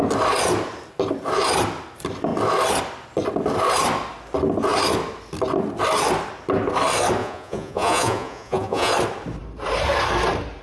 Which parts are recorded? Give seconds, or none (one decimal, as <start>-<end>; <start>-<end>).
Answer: 0.0-7.2; 8.9-10.6